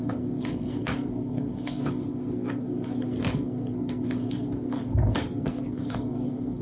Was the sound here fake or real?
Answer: fake